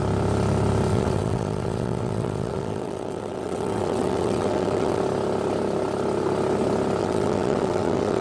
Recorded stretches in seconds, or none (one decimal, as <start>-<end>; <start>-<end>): 0.0-0.9; 5.0-7.0